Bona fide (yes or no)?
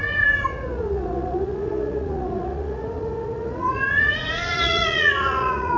no